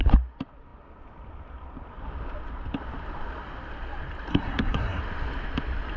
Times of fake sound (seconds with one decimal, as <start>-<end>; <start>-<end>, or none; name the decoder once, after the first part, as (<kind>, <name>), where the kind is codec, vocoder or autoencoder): 4.3-5.0 (codec, SNAC)